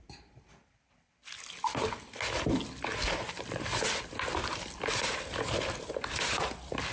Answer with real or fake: real